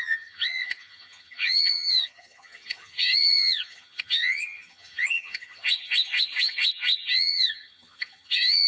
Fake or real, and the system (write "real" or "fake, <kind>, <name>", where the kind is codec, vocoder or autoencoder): fake, vocoder, HiFi-GAN